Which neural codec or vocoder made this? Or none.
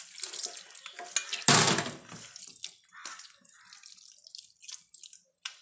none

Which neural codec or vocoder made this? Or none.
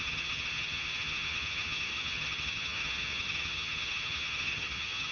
vocoder, HiFi-GAN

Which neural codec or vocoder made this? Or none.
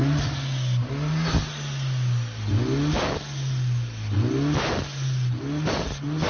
none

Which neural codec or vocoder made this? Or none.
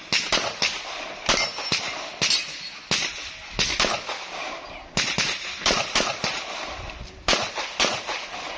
none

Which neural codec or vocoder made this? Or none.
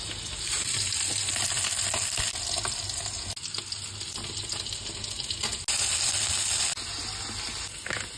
none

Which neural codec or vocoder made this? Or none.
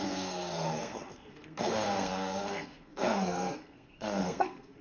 codec, SNAC